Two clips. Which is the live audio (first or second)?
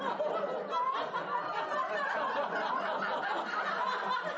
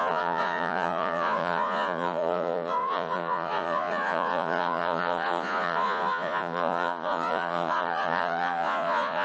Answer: first